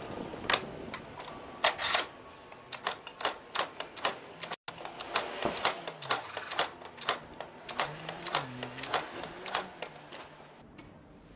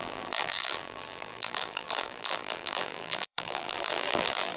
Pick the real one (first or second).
first